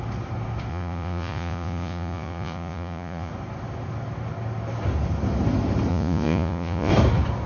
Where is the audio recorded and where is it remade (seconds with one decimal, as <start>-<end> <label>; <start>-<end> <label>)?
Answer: 0.0-0.7 recorded; 0.7-3.3 remade; 3.3-5.9 recorded; 5.9-6.9 remade; 6.9-7.5 recorded